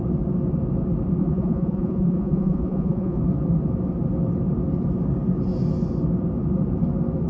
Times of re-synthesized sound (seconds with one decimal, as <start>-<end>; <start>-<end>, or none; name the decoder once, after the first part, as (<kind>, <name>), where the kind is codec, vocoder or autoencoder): 1.2-3.2 (vocoder, Vocos)